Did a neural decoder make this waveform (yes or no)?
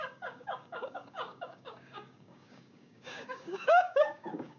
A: yes